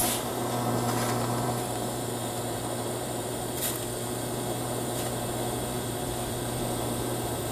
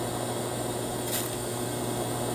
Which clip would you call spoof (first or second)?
first